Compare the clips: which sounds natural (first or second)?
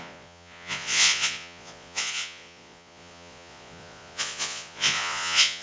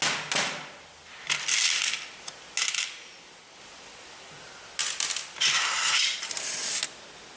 second